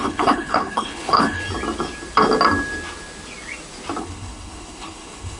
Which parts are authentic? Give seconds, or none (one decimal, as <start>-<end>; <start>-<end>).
1.4-4.0